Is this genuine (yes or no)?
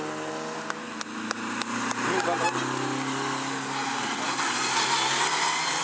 yes